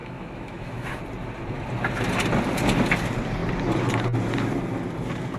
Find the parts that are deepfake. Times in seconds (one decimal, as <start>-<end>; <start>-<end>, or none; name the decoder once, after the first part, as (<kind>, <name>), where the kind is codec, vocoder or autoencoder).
0.0-1.0 (autoencoder, DAC-VAE)